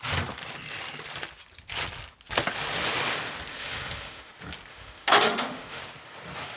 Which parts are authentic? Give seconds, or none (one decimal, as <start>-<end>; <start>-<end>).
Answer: 0.0-3.5; 4.3-4.7; 5.8-6.6